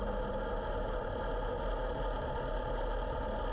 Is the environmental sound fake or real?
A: real